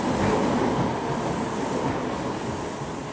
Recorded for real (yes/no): yes